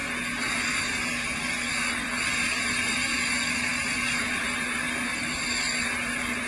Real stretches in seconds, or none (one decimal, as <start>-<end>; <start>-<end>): 0.0-6.5